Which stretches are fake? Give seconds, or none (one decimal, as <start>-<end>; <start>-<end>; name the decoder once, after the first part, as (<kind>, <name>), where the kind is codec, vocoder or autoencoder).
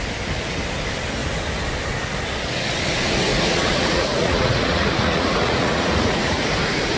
3.3-6.4 (vocoder, Vocos)